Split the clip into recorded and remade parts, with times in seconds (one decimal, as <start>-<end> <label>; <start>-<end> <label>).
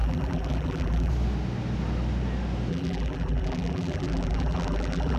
0.0-1.1 remade; 1.1-2.7 recorded; 2.7-5.2 remade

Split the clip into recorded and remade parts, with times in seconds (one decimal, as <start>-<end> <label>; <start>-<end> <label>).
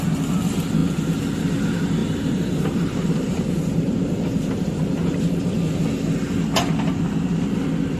0.0-2.0 recorded; 2.0-5.5 remade; 5.5-8.0 recorded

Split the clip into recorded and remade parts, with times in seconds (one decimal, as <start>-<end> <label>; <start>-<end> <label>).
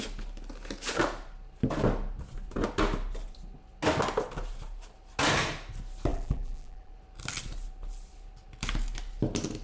0.0-6.1 recorded; 6.1-6.9 remade; 6.9-9.6 recorded